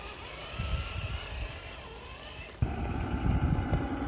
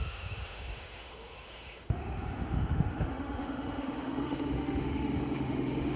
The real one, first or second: first